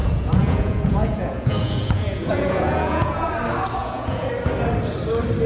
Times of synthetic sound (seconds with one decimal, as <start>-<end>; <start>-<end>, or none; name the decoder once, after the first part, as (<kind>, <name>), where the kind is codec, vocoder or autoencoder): 0.0-3.3 (vocoder, Vocos); 3.8-4.3